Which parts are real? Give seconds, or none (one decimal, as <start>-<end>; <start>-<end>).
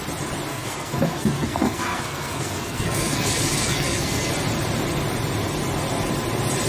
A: 0.0-0.5; 4.3-6.7